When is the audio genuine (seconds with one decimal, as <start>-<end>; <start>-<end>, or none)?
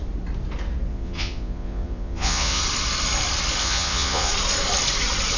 0.0-0.9; 2.6-3.6; 4.3-5.4